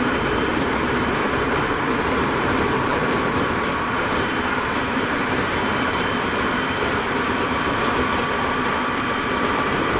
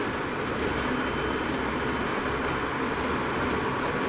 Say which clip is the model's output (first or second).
first